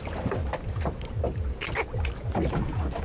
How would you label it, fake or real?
real